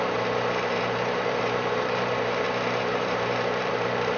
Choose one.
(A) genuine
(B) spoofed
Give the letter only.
B